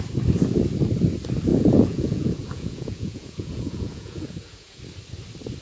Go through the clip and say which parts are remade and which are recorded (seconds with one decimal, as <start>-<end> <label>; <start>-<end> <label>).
0.0-1.5 recorded; 1.5-4.8 remade; 4.8-5.6 recorded